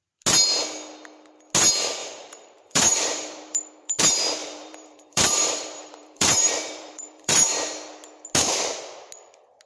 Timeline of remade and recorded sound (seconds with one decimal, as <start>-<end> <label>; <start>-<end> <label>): 0.0-2.0 recorded; 2.0-4.0 remade; 4.0-4.4 recorded; 4.4-7.5 remade; 7.5-9.7 recorded